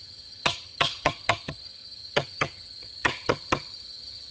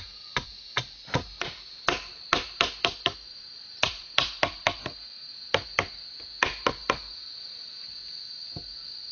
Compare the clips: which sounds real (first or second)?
second